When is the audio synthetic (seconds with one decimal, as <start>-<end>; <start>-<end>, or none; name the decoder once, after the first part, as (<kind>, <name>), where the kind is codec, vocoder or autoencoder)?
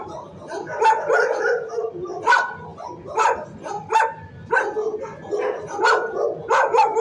none